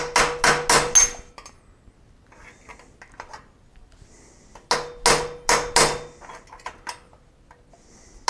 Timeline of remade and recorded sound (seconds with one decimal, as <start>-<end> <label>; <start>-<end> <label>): 0.0-8.3 recorded